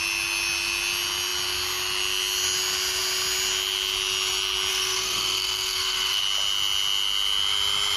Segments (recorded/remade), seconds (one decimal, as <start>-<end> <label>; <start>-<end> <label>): 0.0-4.7 recorded; 4.7-6.2 remade; 6.2-8.0 recorded